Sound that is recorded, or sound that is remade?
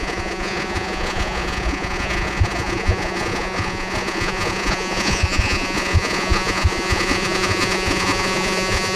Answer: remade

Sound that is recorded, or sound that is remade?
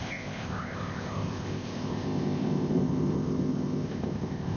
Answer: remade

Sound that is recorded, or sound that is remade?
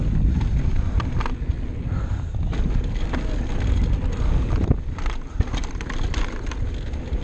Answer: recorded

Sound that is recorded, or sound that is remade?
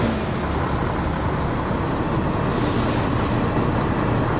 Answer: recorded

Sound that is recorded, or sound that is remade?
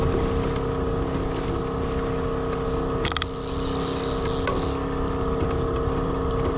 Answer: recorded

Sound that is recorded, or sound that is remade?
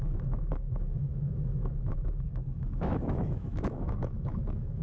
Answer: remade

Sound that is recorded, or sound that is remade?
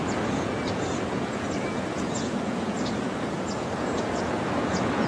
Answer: remade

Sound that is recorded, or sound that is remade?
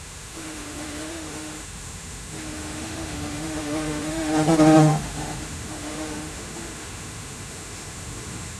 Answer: remade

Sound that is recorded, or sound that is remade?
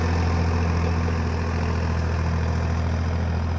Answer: recorded